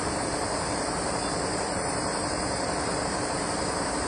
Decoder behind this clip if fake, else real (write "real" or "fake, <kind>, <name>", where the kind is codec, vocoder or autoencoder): fake, vocoder, BigVGAN v2